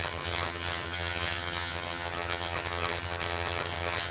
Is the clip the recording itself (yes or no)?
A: no